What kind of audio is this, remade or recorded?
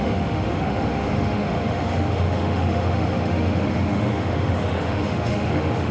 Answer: remade